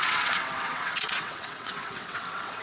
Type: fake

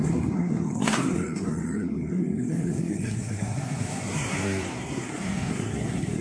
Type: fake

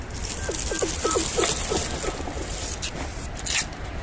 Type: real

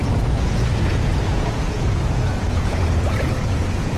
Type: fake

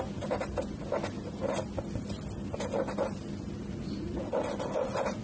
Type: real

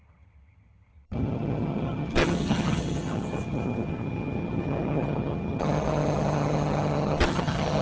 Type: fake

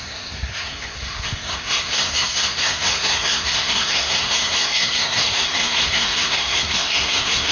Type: fake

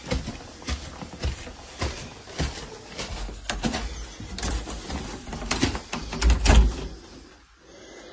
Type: real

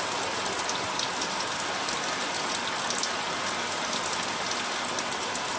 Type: real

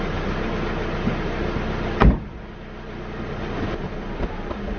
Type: real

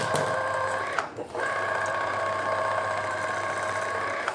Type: real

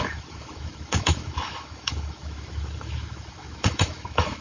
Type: fake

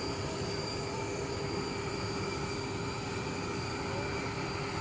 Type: real